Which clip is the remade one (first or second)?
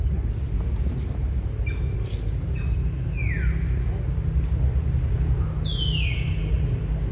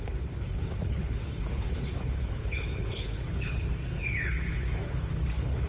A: second